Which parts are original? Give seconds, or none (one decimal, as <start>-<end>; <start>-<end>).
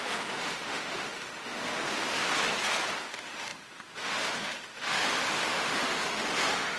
2.2-3.0